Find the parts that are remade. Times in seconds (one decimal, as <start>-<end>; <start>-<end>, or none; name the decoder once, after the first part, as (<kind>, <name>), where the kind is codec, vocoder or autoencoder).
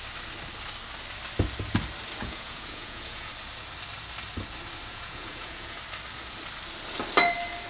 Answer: 2.2-3.3 (vocoder, Vocos); 4.9-5.8